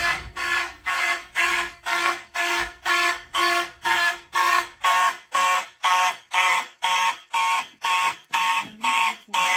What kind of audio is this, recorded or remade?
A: remade